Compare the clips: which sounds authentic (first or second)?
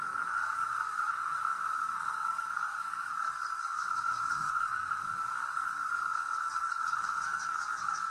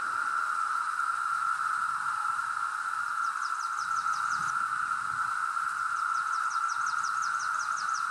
second